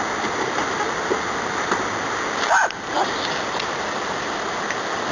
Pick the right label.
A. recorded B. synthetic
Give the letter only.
A